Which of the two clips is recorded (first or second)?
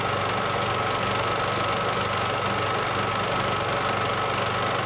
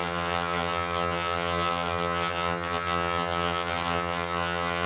first